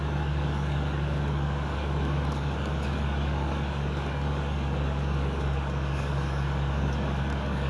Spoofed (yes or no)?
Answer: yes